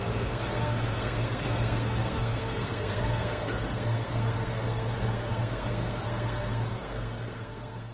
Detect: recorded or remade remade